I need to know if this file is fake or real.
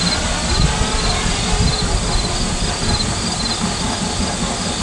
real